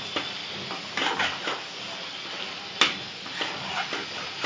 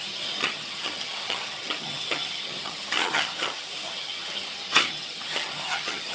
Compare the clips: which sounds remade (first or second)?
second